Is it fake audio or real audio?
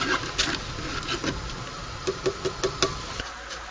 real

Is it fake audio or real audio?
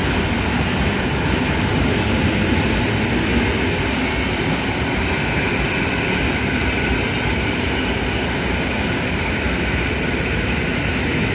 real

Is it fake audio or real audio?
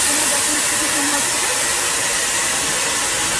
real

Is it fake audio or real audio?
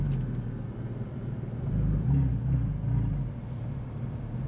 real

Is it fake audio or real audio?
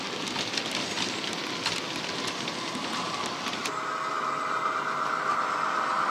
real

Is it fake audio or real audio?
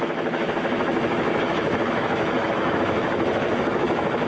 fake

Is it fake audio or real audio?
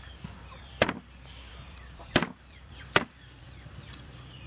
fake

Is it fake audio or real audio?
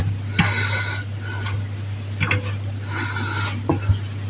real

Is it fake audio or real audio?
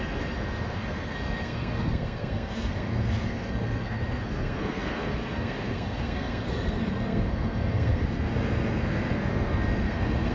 fake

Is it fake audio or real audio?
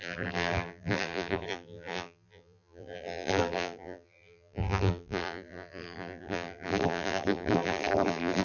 fake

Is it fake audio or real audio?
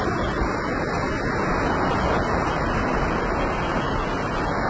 real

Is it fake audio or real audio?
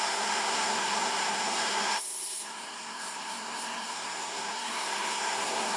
fake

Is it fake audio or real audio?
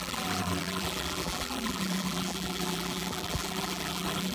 fake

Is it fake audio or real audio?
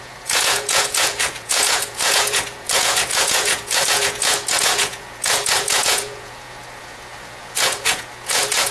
fake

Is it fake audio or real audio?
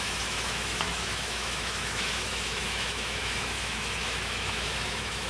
fake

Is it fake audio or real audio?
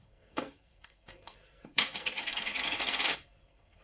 fake